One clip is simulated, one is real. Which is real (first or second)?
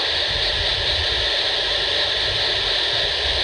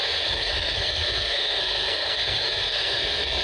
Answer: first